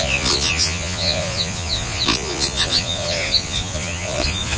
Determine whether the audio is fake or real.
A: fake